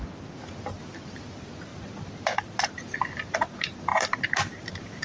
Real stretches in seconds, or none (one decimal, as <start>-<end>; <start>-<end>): 0.0-1.7; 2.7-3.9